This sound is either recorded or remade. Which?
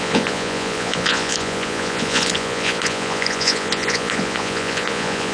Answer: remade